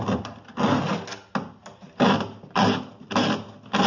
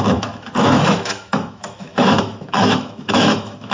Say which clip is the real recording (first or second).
first